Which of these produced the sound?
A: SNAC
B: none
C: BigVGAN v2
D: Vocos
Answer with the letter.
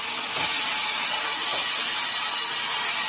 B